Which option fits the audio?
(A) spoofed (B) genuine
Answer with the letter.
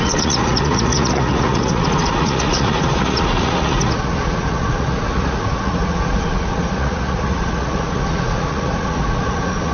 A